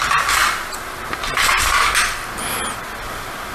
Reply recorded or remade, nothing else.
recorded